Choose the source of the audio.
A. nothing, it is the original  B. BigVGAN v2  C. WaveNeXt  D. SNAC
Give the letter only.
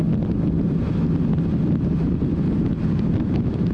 A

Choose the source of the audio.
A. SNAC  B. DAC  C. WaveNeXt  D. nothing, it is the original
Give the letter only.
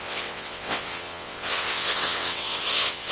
C